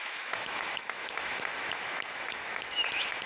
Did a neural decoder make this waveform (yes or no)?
yes